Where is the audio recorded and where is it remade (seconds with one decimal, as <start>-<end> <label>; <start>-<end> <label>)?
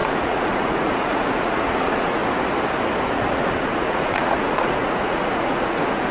0.0-2.2 remade; 2.2-3.0 recorded; 3.0-6.1 remade